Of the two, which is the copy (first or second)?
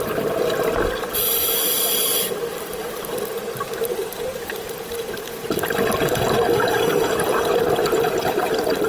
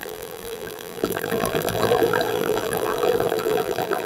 second